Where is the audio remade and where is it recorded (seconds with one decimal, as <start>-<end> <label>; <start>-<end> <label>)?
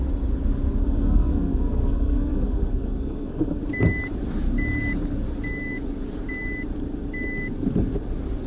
0.0-0.8 recorded; 0.8-3.6 remade; 3.6-8.5 recorded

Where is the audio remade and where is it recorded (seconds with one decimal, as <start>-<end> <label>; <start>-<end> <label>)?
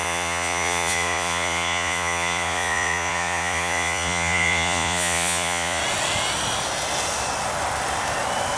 0.0-5.8 remade; 5.8-8.6 recorded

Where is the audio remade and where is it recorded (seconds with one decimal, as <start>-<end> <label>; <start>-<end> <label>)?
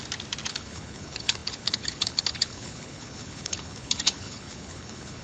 0.0-0.5 recorded; 0.5-5.2 remade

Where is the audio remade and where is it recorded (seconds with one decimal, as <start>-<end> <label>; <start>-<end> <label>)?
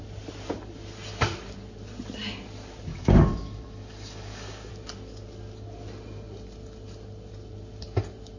0.0-2.9 recorded; 2.9-4.7 remade; 4.7-8.4 recorded